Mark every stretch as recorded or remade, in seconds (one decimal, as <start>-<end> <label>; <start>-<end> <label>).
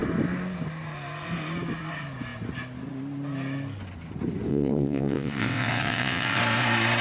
0.0-4.5 recorded; 4.5-6.4 remade; 6.4-7.0 recorded